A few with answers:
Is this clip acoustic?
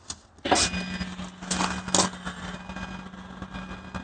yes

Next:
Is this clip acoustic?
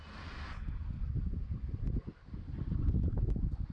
yes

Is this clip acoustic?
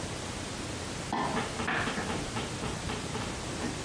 yes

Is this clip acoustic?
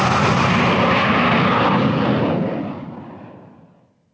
yes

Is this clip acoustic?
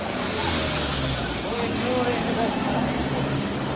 yes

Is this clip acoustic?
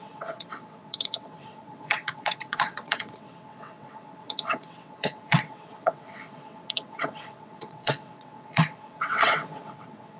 no